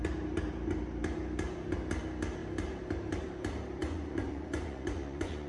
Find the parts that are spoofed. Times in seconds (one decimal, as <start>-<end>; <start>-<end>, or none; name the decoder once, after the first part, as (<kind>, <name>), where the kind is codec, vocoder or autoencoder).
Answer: 3.8-5.5 (vocoder, Vocos)